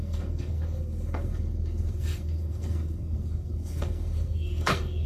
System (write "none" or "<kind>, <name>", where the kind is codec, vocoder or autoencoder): codec, SNAC